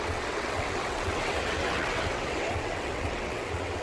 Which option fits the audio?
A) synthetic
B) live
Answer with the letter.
A